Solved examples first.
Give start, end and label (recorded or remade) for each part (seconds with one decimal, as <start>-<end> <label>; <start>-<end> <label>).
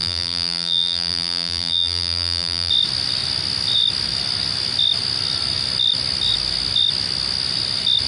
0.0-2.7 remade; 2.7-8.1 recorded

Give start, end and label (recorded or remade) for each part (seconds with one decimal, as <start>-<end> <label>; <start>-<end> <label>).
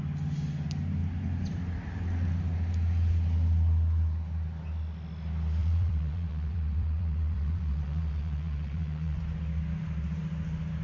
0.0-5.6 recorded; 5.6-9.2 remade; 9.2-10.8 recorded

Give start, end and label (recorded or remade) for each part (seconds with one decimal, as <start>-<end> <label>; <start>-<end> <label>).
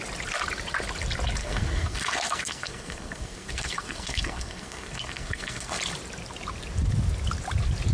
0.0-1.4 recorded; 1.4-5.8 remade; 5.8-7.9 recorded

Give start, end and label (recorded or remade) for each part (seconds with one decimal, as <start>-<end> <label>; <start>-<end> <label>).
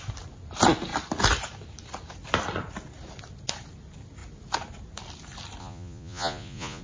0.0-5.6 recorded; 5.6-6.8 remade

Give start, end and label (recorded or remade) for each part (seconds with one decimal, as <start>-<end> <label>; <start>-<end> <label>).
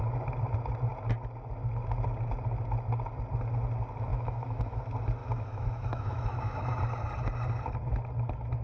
0.0-4.1 recorded; 4.1-4.8 remade; 4.8-5.2 recorded; 5.2-6.8 remade; 6.8-8.6 recorded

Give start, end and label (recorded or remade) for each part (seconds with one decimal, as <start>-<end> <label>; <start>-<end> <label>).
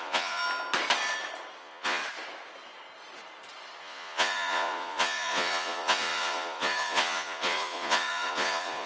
0.0-0.4 remade; 0.4-1.6 recorded; 1.6-2.0 remade; 2.0-3.8 recorded; 3.8-8.9 remade